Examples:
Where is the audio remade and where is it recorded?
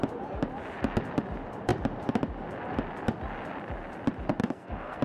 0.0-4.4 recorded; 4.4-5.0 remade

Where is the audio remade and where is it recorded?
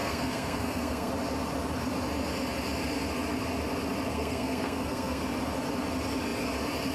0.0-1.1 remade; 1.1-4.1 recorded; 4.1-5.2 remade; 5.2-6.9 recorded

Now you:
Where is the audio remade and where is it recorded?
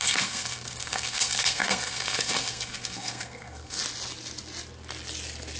0.0-3.8 remade; 3.8-5.6 recorded